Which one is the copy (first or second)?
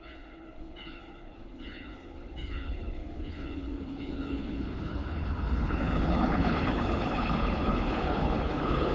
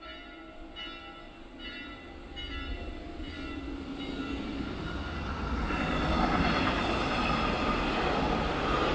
first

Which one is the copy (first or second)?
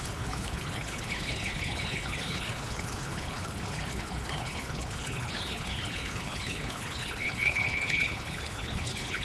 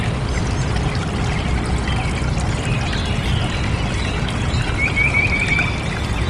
first